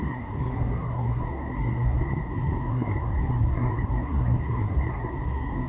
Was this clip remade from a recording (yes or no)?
yes